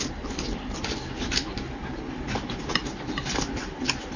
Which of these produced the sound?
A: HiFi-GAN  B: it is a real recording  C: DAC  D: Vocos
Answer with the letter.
B